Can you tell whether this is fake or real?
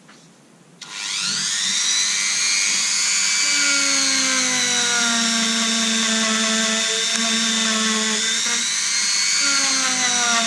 real